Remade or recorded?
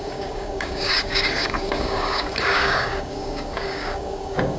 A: remade